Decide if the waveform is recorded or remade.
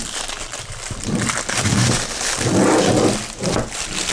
recorded